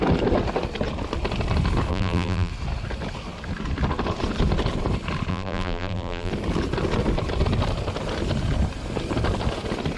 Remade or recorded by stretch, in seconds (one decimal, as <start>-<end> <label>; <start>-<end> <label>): 0.0-1.9 recorded; 1.9-2.5 remade; 2.5-5.3 recorded; 5.3-6.3 remade; 6.3-10.0 recorded